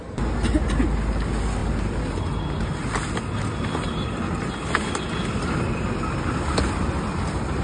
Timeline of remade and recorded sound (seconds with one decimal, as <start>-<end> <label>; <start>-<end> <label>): 0.0-7.6 recorded